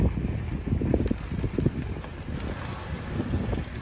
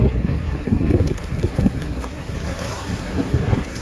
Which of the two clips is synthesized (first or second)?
second